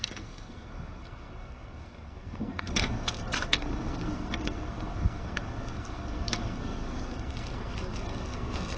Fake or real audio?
fake